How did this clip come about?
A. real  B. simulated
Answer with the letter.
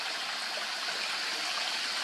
A